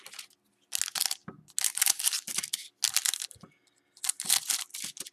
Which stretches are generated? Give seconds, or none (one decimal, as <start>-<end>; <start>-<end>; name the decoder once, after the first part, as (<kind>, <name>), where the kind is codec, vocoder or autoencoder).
none